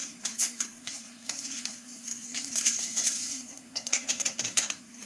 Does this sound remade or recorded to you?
remade